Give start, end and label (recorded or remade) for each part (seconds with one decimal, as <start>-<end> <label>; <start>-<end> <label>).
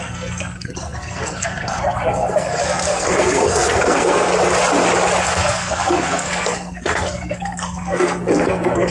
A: 0.0-4.3 remade; 4.3-5.2 recorded; 5.2-8.9 remade